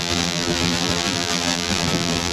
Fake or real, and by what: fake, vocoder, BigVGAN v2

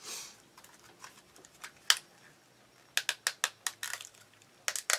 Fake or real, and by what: real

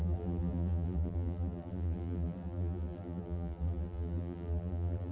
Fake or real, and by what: fake, vocoder, BigVGAN v2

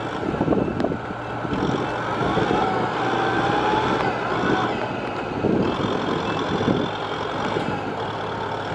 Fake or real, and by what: real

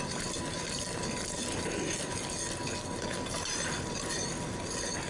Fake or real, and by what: real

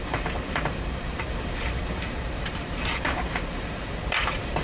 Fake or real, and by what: fake, vocoder, BigVGAN v2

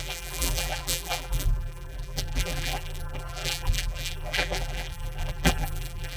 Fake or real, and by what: fake, vocoder, BigVGAN v2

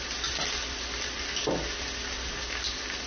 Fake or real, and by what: real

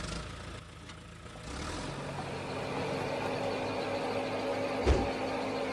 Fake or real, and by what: real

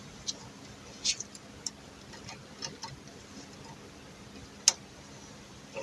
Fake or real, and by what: real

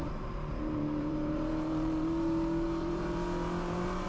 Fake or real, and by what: fake, vocoder, BigVGAN v2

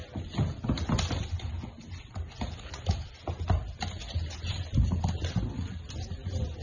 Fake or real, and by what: real